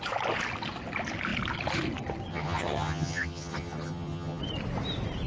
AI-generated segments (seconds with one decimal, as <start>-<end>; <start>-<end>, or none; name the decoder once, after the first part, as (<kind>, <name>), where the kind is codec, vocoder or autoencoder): 2.3-4.4 (vocoder, HiFi-GAN)